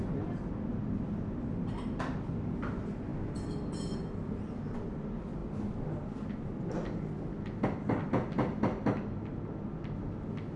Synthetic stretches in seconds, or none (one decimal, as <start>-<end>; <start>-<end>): 5.4-10.0